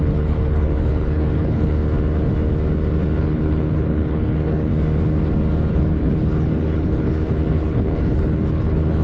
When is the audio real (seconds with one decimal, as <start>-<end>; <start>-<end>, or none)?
1.8-3.2; 4.7-5.7